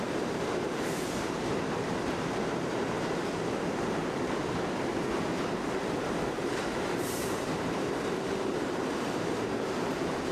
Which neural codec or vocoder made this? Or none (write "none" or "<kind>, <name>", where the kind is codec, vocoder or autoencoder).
vocoder, BigVGAN v2